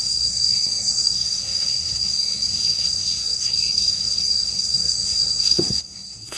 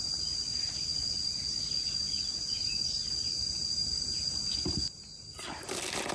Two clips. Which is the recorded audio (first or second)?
second